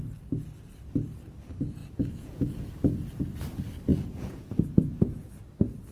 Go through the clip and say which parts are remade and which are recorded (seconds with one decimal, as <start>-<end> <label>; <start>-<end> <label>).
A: 0.0-1.8 recorded; 1.8-2.7 remade; 2.7-3.9 recorded; 3.9-5.3 remade; 5.3-5.9 recorded